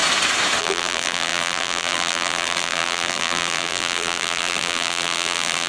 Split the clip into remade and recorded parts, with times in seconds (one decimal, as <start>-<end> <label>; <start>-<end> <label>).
0.0-0.6 recorded; 0.6-5.7 remade